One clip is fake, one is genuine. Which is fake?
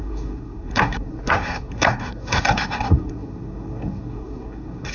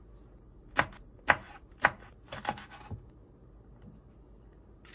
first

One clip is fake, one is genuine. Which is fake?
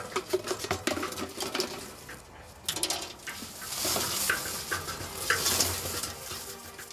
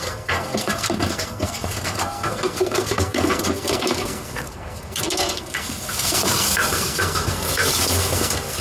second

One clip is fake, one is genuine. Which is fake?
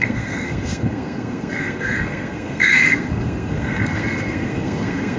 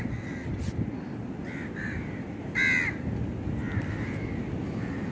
first